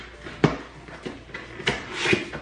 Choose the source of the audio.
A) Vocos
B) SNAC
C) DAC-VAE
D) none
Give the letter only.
D